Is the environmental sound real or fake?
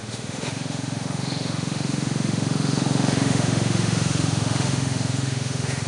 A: fake